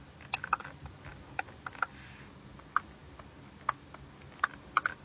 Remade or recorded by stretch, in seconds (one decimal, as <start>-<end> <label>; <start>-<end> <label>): 0.0-5.0 recorded